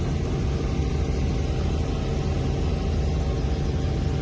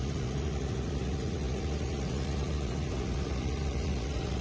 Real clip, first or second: first